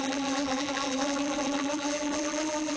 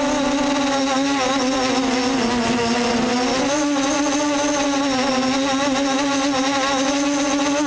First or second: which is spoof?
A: first